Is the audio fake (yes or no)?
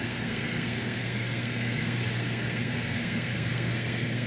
yes